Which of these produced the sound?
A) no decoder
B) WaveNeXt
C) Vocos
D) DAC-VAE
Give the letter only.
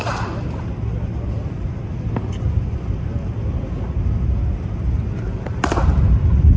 A